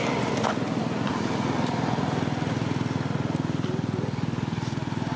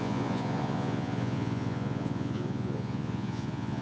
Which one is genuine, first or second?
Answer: first